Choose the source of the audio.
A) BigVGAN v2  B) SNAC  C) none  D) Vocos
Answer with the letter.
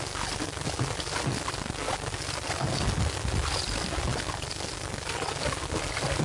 C